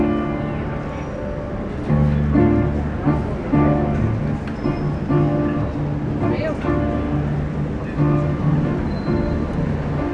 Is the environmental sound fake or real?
real